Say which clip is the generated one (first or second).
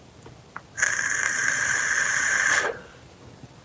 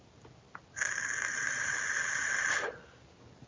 first